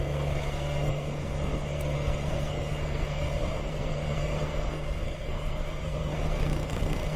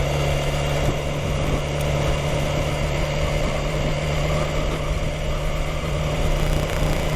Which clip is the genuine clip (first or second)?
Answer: second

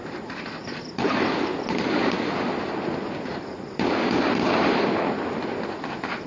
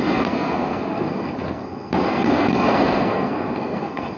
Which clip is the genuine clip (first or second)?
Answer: first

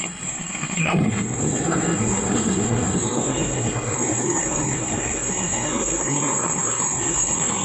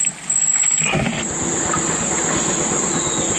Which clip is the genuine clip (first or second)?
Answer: second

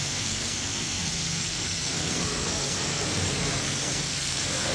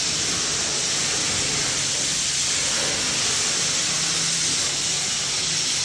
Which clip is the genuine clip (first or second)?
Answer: second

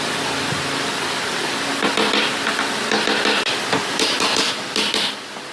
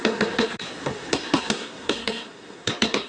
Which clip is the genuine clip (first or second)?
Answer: first